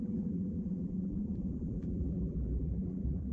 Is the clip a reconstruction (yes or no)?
yes